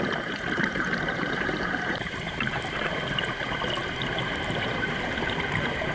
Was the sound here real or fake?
fake